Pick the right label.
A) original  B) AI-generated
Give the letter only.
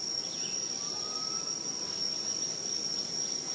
A